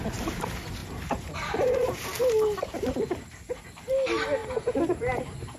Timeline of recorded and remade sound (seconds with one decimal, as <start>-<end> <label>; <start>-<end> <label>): 0.0-5.6 remade